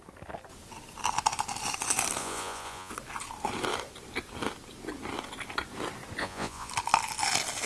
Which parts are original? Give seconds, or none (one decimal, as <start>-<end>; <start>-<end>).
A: 0.0-2.2; 2.9-6.2; 6.7-7.7